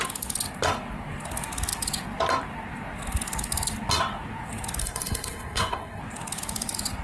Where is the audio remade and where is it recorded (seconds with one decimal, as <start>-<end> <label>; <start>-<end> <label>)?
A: 0.0-4.8 recorded; 4.8-6.0 remade; 6.0-7.0 recorded